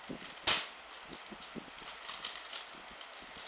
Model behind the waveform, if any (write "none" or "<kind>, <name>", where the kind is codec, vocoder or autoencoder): none